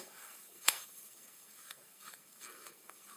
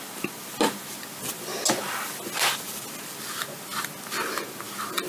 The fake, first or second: first